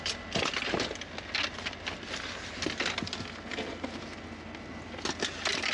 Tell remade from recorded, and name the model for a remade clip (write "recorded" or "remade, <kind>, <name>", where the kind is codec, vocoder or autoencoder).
recorded